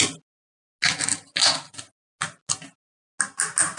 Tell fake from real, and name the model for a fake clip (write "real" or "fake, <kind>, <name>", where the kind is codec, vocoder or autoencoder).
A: real